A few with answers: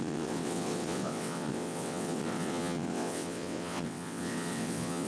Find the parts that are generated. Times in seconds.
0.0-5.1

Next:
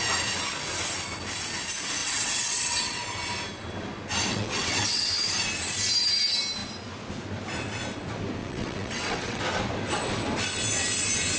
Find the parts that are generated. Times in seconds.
2.0-3.0; 4.3-5.1; 8.4-9.4

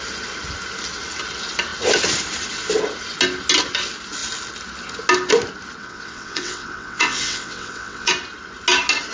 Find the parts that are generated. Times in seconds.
5.8-8.1

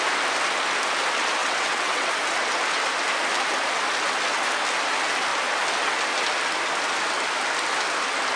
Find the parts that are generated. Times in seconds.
1.4-2.1

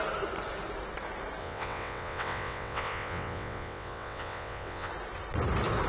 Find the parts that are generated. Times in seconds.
1.4-4.9

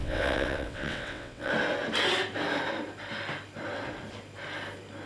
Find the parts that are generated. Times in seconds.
0.0-1.5

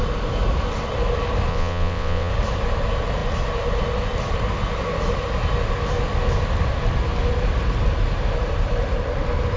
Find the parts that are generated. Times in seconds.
1.5-2.3